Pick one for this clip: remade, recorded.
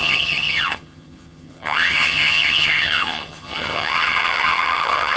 remade